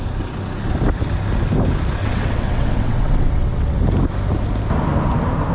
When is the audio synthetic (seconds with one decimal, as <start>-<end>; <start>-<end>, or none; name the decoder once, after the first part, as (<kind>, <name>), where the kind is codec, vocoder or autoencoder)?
2.0-3.8 (vocoder, WaveNeXt)